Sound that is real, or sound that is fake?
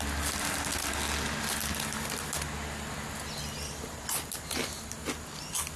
real